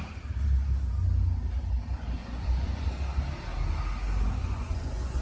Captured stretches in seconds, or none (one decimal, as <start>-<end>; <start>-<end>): 0.0-2.2; 2.9-4.4